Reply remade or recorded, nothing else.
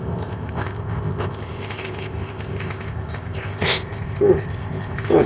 remade